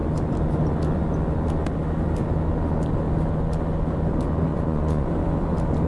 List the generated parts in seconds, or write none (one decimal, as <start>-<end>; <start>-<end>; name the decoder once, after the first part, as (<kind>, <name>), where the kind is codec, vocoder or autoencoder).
4.5-5.1 (vocoder, Vocos)